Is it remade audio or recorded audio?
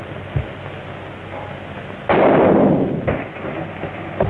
recorded